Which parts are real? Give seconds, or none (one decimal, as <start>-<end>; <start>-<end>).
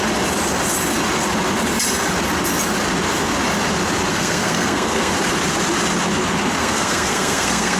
0.0-4.1; 5.1-6.6